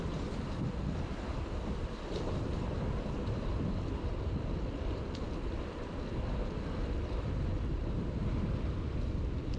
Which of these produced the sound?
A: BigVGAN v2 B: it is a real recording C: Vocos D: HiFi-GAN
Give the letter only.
A